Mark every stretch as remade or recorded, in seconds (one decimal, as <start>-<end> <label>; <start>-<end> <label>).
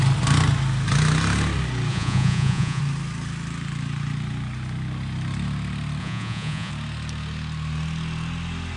0.0-1.9 recorded; 1.9-2.8 remade; 2.8-6.0 recorded; 6.0-6.7 remade; 6.7-8.8 recorded